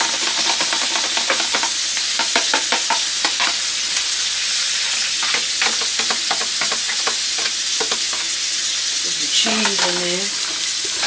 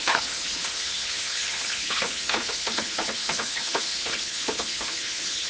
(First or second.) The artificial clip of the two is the second